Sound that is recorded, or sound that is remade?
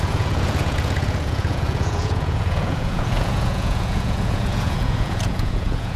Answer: remade